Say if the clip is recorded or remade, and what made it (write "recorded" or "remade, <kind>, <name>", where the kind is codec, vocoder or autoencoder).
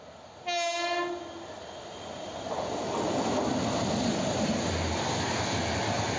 recorded